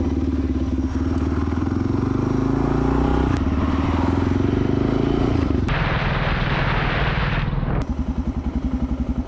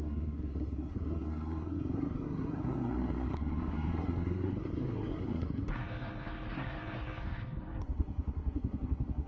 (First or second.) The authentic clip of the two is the first